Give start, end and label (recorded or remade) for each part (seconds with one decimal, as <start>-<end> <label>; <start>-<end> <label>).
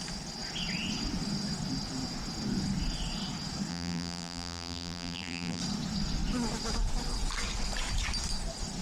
0.0-3.7 recorded; 3.7-5.6 remade; 5.6-8.8 recorded